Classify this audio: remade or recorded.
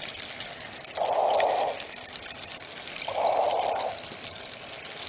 recorded